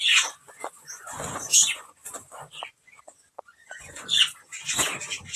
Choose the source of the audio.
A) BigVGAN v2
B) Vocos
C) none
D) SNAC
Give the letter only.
B